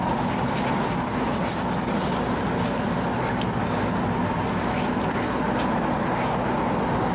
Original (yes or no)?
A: yes